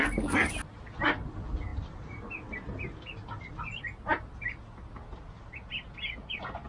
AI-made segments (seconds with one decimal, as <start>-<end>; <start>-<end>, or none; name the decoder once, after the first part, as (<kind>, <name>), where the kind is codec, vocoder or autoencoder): none